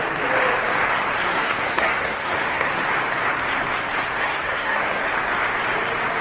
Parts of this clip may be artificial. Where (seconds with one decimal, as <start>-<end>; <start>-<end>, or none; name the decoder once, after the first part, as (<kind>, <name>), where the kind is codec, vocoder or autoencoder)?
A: 1.3-2.7 (codec, SNAC); 4.2-5.0